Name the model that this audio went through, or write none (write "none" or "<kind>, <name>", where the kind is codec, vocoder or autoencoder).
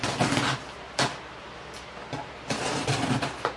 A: none